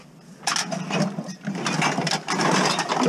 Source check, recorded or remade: recorded